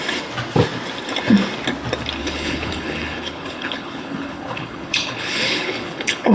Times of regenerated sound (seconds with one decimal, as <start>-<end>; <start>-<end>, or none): 2.2-6.3